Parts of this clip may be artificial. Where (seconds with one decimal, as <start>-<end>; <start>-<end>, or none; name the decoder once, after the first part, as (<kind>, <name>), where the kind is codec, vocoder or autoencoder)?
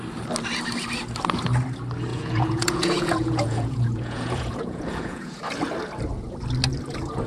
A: 2.1-5.4 (vocoder, Vocos)